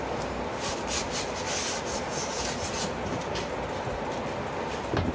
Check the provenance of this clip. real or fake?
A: real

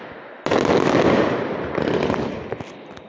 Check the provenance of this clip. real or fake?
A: real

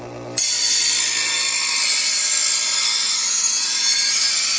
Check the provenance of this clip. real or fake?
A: real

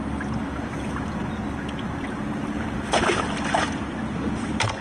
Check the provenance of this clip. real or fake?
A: real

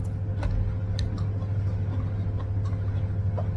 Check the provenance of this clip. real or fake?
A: real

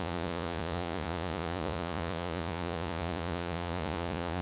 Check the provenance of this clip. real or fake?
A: fake